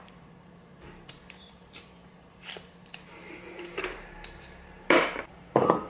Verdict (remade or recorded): remade